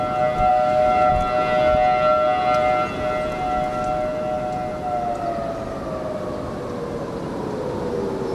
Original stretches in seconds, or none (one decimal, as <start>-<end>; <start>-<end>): 0.0-0.5; 1.1-8.3